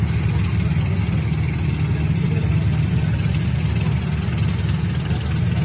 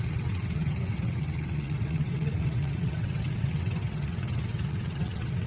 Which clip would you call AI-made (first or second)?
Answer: second